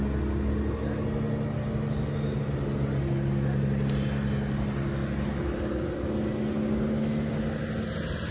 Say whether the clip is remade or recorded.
recorded